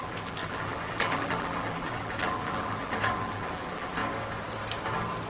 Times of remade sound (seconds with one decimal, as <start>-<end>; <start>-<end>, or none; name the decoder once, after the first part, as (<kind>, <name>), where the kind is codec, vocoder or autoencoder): 0.0-4.0 (vocoder, BigVGAN v2)